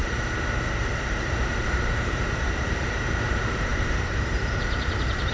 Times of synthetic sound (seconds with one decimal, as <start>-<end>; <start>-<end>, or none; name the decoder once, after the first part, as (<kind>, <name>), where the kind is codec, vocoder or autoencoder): 1.2-5.3 (vocoder, BigVGAN v2)